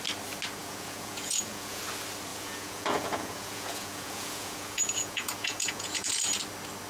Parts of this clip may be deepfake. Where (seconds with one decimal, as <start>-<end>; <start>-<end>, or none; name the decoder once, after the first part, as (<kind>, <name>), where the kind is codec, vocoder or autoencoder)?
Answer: 0.6-1.8 (vocoder, Vocos); 2.3-6.4